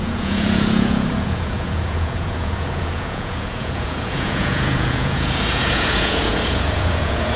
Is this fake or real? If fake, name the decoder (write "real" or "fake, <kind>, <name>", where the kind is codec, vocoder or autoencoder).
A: fake, vocoder, Vocos